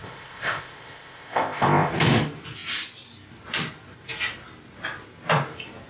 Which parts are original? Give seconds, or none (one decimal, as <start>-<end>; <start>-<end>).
1.9-5.9